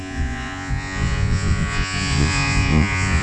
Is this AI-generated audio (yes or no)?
yes